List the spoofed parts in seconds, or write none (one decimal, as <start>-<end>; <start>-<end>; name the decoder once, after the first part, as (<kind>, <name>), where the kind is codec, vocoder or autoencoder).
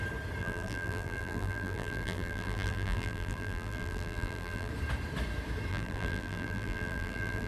0.4-4.7 (vocoder, BigVGAN v2); 5.7-7.5